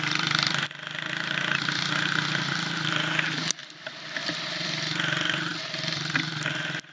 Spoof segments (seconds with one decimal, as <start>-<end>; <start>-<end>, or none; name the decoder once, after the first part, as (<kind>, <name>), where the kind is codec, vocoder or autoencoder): 0.0-3.6 (vocoder, BigVGAN v2); 4.5-6.9